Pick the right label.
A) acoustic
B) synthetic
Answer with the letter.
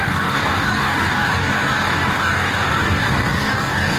B